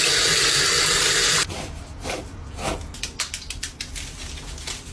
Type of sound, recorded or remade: recorded